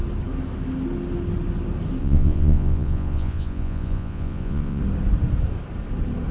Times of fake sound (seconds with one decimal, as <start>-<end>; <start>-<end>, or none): 2.0-4.8